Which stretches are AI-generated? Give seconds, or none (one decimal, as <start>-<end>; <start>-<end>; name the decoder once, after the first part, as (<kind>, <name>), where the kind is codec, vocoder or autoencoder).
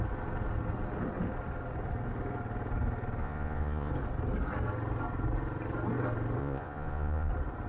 3.2-3.9 (vocoder, Vocos); 6.4-7.3